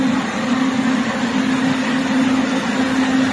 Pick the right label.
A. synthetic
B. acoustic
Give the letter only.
B